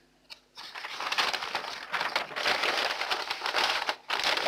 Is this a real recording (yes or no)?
yes